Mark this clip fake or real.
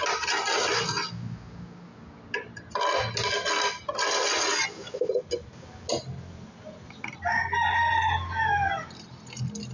real